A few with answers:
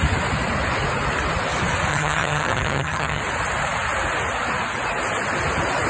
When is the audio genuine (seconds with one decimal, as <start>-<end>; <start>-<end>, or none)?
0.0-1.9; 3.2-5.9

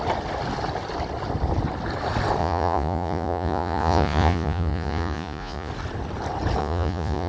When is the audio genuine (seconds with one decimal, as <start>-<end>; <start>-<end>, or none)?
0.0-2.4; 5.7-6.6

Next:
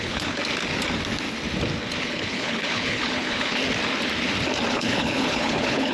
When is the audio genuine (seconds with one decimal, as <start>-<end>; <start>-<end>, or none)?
0.4-2.0; 3.6-4.7

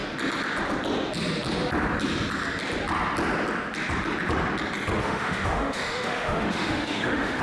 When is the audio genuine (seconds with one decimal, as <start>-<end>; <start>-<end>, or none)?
0.0-5.0